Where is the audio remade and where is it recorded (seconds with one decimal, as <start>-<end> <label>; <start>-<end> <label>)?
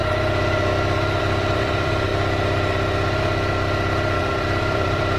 0.0-1.2 recorded; 1.2-2.1 remade; 2.1-4.2 recorded; 4.2-5.2 remade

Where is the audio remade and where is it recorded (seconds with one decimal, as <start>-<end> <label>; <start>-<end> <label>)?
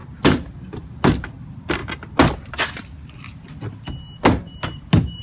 0.0-5.2 recorded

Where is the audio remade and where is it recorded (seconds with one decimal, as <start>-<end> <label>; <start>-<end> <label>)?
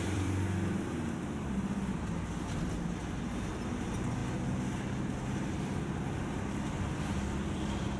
0.0-3.0 remade; 3.0-3.5 recorded; 3.5-4.2 remade; 4.2-6.8 recorded; 6.8-8.0 remade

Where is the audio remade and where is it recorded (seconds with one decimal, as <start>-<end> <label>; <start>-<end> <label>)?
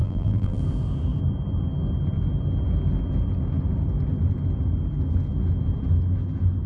0.0-0.6 remade; 0.6-6.7 recorded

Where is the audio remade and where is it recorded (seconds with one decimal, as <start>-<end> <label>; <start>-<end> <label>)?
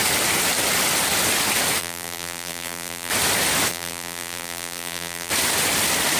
0.0-1.8 recorded; 1.8-3.1 remade; 3.1-3.7 recorded; 3.7-5.3 remade; 5.3-6.2 recorded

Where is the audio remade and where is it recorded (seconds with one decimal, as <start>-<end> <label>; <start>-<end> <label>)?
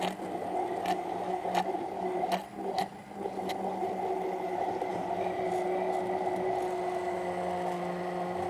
0.0-4.9 recorded; 4.9-5.5 remade; 5.5-8.5 recorded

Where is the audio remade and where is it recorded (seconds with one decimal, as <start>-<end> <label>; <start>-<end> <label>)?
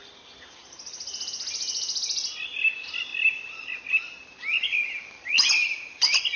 0.0-4.5 recorded; 4.5-5.5 remade; 5.5-6.4 recorded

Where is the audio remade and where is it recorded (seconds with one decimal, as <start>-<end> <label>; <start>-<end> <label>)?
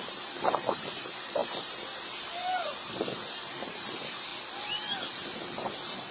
0.0-4.3 remade; 4.3-5.1 recorded; 5.1-6.1 remade